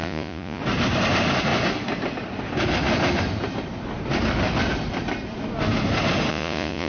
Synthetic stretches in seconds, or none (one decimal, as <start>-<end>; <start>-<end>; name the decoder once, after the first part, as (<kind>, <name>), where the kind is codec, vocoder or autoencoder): 0.0-0.6 (vocoder, Vocos); 6.3-6.9